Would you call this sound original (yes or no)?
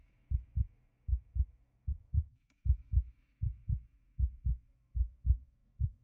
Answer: no